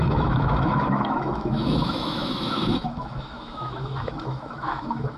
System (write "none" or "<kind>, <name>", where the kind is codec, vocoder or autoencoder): autoencoder, DAC-VAE